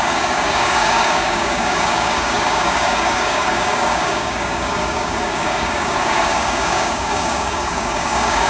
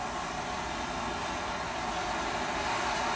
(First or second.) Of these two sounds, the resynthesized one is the first